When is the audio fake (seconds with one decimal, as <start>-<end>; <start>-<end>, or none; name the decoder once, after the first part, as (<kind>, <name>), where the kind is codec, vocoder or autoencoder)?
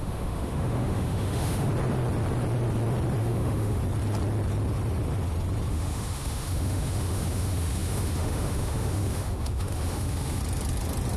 0.0-1.7 (autoencoder, DAC-VAE); 3.2-3.8; 5.7-10.4